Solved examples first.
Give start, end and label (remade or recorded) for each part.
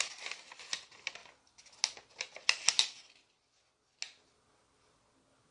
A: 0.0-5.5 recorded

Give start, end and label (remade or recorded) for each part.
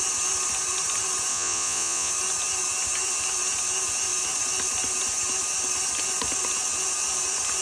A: 0.0-1.3 recorded; 1.3-2.1 remade; 2.1-7.6 recorded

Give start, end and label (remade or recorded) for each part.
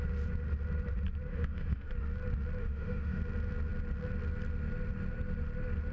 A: 0.0-1.3 recorded; 1.3-1.9 remade; 1.9-2.6 recorded; 2.6-3.2 remade; 3.2-5.9 recorded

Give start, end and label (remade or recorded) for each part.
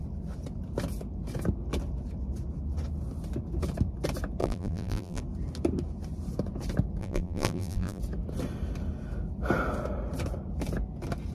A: 0.0-4.4 recorded; 4.4-5.2 remade; 5.2-7.0 recorded; 7.0-8.0 remade; 8.0-11.3 recorded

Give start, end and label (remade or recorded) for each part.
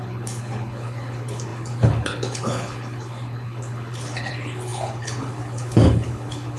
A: 0.0-6.6 remade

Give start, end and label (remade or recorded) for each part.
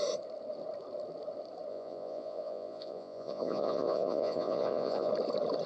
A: 0.0-1.7 recorded; 1.7-5.1 remade; 5.1-5.7 recorded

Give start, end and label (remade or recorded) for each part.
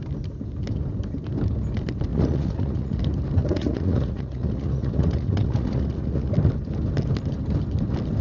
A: 0.0-2.1 recorded; 2.1-3.0 remade; 3.0-3.4 recorded; 3.4-6.3 remade; 6.3-8.2 recorded